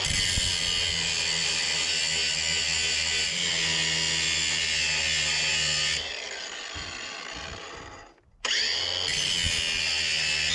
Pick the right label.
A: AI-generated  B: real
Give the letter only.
B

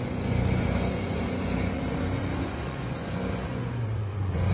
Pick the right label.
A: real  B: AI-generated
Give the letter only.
B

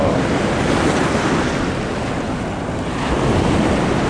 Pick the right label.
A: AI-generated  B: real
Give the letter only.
B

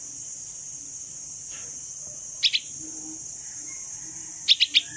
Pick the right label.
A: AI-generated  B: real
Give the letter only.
B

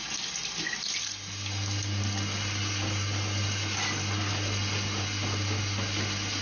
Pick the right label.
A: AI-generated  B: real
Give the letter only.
B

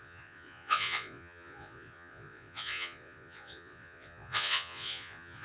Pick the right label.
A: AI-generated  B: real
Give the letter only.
A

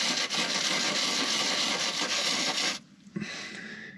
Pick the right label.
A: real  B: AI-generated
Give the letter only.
A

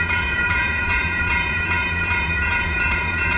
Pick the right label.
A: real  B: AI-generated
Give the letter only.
B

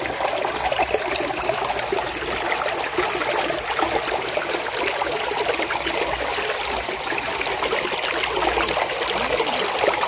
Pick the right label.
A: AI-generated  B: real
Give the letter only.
B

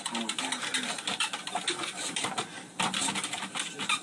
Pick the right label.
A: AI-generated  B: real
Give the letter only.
B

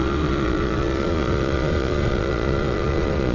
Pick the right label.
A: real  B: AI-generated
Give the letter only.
B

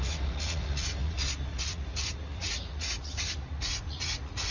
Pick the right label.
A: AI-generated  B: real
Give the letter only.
A